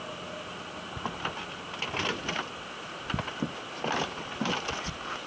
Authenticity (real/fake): real